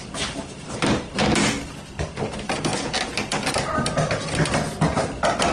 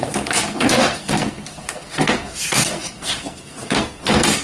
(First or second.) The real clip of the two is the first